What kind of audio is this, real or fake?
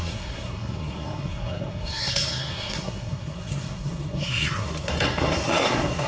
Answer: fake